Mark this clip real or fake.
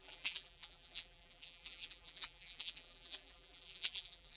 fake